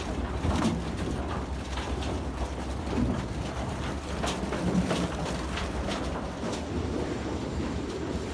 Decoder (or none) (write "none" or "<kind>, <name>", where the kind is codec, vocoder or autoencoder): vocoder, BigVGAN v2